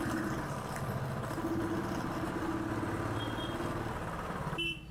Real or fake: real